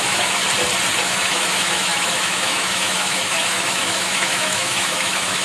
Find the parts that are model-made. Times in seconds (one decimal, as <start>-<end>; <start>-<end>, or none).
0.0-0.4; 1.0-5.4